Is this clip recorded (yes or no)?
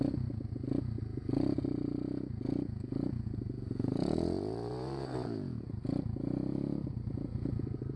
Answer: no